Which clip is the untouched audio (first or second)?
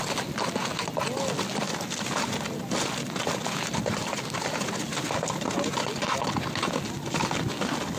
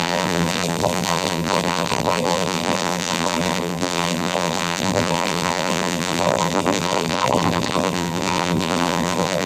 first